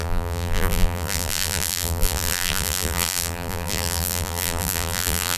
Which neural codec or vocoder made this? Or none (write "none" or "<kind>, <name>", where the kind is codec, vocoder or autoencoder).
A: vocoder, BigVGAN v2